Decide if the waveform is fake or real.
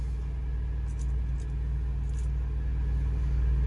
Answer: real